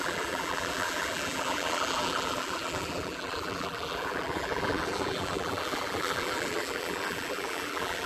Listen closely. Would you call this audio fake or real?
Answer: fake